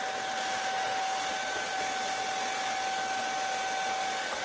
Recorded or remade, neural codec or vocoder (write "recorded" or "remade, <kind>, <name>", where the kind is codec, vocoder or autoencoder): recorded